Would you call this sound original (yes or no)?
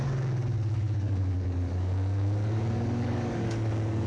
no